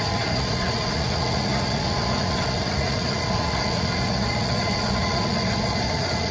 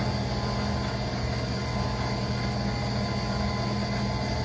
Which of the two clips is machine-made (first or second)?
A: first